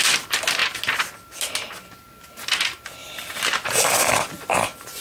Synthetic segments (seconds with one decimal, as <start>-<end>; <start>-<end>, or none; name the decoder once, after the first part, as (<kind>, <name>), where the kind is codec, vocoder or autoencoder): 3.0-4.4 (vocoder, BigVGAN v2)